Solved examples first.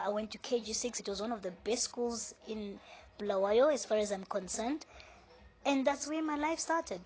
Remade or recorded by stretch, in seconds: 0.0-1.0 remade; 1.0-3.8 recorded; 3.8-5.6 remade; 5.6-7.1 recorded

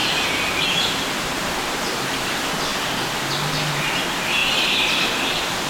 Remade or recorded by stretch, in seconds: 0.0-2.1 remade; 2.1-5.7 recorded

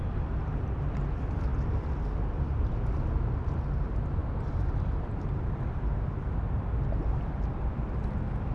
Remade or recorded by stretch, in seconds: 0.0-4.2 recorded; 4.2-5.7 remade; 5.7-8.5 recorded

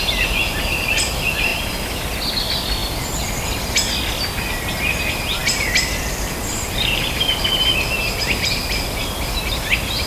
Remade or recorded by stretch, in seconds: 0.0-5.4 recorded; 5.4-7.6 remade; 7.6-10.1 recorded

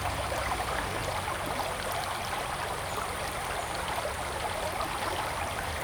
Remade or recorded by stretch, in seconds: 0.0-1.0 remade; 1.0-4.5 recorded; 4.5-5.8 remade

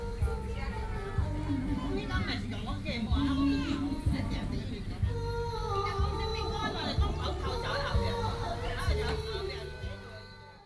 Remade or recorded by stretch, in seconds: 0.0-2.5 recorded; 2.5-3.4 remade; 3.4-6.3 recorded; 6.3-8.8 remade; 8.8-10.7 recorded

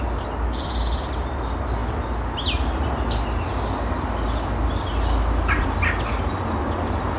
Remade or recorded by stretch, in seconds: 0.0-7.2 recorded

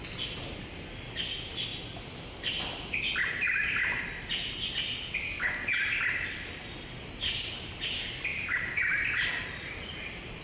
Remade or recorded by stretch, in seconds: 0.0-8.3 recorded; 8.3-10.4 remade